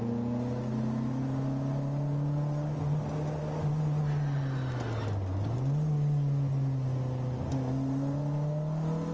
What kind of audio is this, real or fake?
real